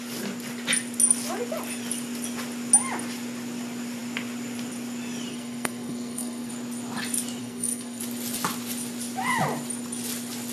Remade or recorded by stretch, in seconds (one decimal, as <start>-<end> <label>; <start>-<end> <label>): 0.0-5.3 recorded; 5.3-6.5 remade; 6.5-7.4 recorded; 7.4-8.0 remade; 8.0-10.5 recorded

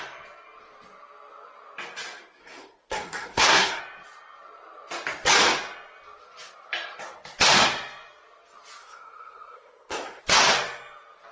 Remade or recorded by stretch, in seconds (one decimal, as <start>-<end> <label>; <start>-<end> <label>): 0.0-2.4 recorded; 2.4-3.8 remade; 3.8-8.8 recorded; 8.8-10.2 remade; 10.2-11.3 recorded